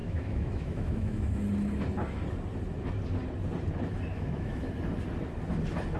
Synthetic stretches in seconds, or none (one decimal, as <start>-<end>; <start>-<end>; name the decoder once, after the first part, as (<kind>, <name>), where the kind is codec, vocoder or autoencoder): 0.0-1.4 (autoencoder, DAC-VAE); 4.1-4.7